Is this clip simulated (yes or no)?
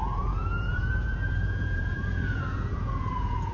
yes